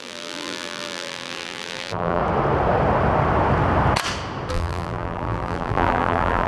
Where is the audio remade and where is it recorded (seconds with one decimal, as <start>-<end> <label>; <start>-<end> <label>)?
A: 0.0-2.2 remade; 2.2-4.5 recorded; 4.5-6.5 remade